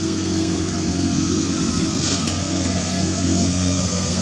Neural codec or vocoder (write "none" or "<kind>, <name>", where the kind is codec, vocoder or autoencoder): codec, SNAC